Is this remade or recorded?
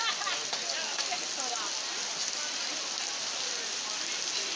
recorded